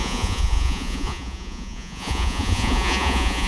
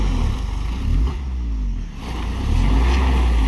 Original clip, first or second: second